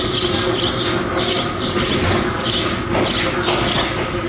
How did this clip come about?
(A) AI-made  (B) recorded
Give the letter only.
B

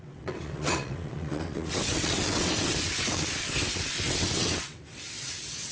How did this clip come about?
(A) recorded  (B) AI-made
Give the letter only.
B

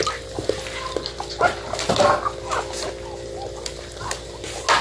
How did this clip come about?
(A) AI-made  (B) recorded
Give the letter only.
B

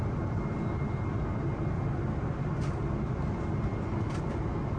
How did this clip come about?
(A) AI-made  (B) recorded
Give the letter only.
B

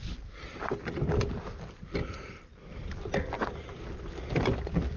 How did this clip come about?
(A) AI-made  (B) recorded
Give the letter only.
B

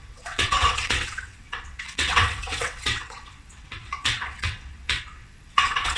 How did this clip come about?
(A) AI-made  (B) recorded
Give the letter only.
A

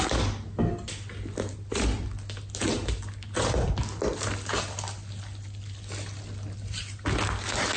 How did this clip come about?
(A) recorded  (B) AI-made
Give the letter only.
A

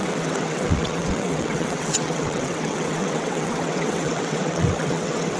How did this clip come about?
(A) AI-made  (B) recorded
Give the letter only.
A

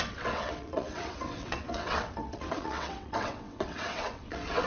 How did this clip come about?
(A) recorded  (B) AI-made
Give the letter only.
B